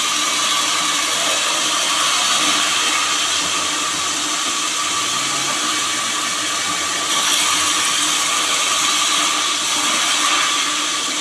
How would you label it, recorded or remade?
recorded